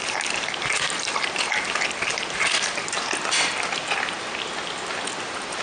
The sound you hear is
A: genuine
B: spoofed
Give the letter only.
A